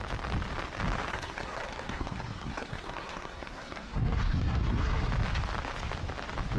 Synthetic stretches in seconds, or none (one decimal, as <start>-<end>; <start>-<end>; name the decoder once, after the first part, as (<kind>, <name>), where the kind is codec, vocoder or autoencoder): 1.1-5.1 (codec, SNAC)